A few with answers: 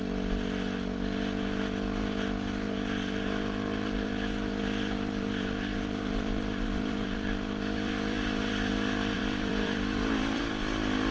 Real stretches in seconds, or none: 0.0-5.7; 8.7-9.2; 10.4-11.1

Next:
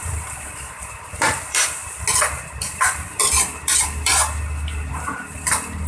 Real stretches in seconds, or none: 1.8-2.6; 4.1-4.9

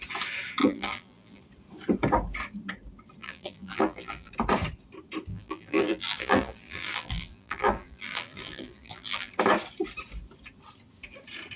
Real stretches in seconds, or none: 0.0-0.6; 1.4-3.2; 4.3-5.3; 9.3-11.6

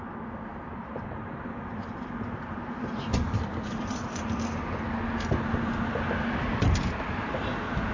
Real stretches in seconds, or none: 0.0-0.5; 4.2-7.9

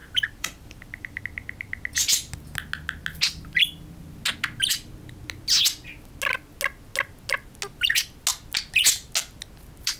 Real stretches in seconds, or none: 1.2-10.0

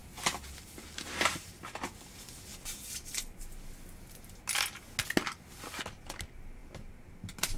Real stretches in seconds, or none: 0.0-7.6